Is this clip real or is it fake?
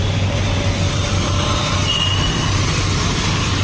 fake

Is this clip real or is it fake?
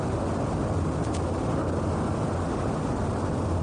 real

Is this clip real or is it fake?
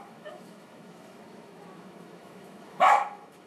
fake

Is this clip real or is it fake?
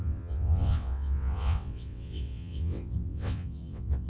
fake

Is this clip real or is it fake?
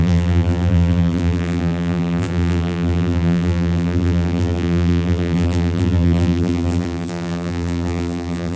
fake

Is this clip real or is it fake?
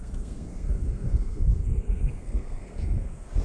fake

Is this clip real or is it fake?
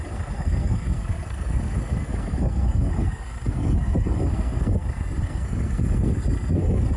fake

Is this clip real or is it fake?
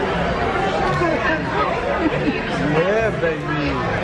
real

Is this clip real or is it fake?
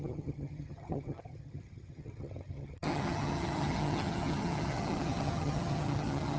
fake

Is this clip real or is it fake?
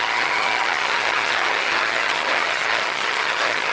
fake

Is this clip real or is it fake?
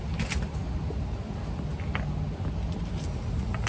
real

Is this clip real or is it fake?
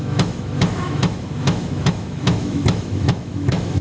fake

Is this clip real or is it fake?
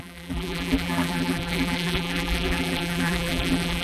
fake